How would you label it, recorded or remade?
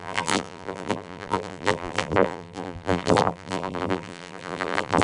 remade